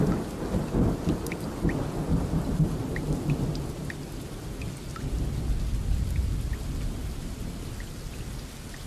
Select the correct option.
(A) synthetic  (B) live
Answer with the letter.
B